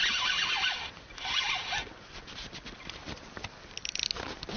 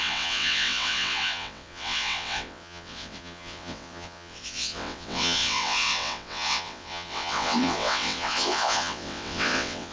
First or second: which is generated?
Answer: second